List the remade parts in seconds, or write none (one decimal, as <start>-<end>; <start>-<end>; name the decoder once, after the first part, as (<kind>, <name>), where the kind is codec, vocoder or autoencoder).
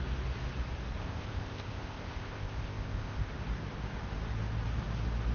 1.0-3.3 (codec, ZipCodec)